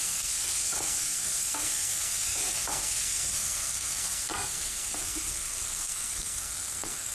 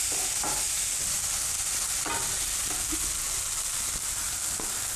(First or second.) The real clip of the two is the second